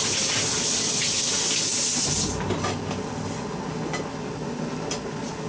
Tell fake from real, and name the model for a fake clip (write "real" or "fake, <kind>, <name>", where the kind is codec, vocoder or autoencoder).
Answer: real